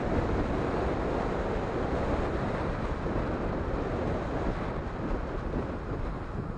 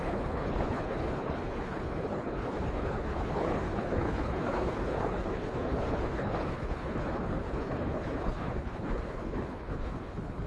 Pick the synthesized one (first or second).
second